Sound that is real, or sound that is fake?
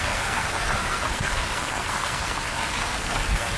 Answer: fake